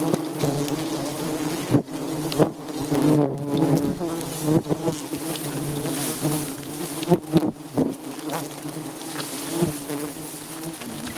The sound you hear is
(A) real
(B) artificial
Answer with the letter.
A